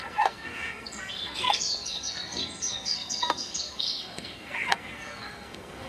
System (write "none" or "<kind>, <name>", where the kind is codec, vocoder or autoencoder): codec, SNAC